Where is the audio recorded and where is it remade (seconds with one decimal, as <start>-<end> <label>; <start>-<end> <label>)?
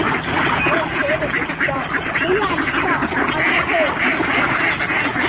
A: 0.0-5.3 recorded